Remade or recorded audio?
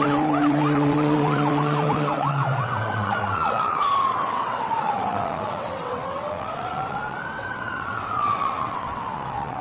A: remade